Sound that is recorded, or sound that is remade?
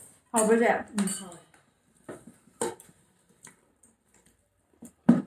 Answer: recorded